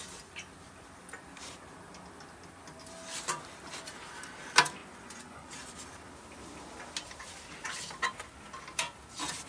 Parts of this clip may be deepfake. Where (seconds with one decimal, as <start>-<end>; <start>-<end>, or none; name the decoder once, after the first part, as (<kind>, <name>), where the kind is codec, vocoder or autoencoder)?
4.8-5.5 (vocoder, Vocos)